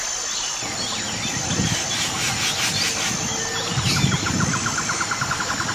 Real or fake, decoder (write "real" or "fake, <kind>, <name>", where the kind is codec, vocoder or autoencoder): real